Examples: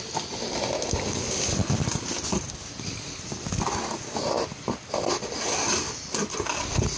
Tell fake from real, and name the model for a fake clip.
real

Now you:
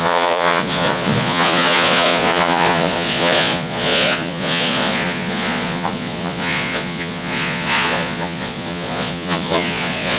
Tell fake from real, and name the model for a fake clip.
fake, vocoder, Vocos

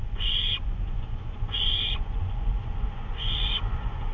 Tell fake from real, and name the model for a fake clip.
fake, vocoder, Vocos